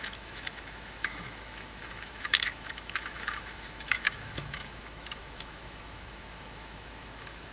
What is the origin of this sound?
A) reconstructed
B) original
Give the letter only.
A